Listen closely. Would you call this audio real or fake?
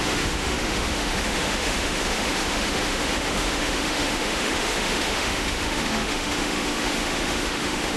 fake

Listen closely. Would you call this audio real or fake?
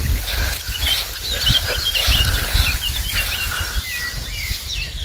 real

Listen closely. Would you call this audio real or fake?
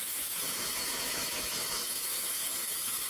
fake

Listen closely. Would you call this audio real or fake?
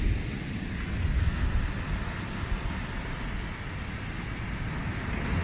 real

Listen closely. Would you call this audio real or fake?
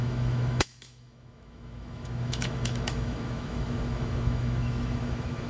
fake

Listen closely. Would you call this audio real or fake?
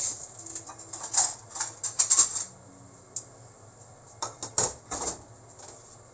real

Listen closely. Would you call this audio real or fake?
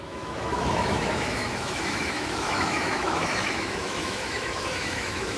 fake